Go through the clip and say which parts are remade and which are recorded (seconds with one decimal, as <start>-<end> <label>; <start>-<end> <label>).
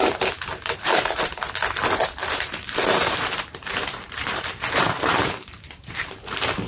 0.0-6.7 remade